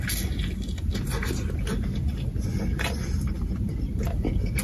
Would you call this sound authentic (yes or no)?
yes